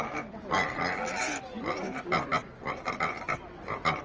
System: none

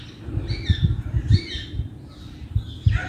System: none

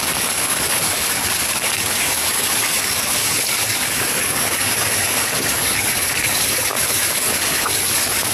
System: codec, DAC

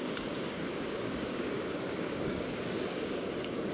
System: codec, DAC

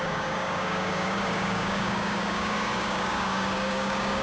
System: codec, DAC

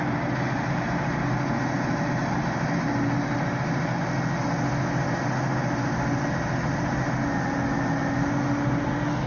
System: none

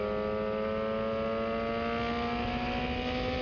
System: none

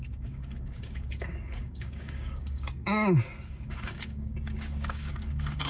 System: codec, DAC